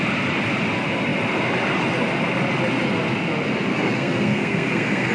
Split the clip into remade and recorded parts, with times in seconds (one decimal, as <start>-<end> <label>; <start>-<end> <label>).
0.0-3.7 recorded; 3.7-5.1 remade